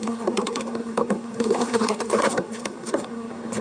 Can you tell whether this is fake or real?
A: fake